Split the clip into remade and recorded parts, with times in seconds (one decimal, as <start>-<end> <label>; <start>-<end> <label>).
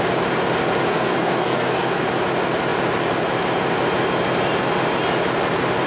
0.0-0.9 recorded; 0.9-2.0 remade; 2.0-5.9 recorded